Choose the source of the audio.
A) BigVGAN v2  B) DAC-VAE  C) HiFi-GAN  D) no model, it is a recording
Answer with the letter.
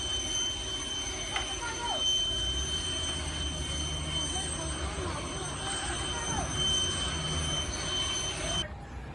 D